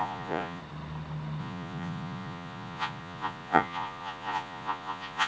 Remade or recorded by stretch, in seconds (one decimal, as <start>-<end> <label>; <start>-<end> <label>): 0.0-0.6 remade; 0.6-1.4 recorded; 1.4-5.3 remade